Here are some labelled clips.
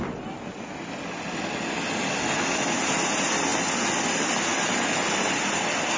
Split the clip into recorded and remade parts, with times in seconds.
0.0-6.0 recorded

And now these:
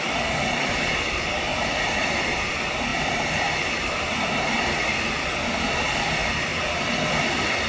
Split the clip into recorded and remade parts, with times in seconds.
0.0-1.5 recorded; 1.5-2.5 remade; 2.5-2.9 recorded; 2.9-3.9 remade; 3.9-7.7 recorded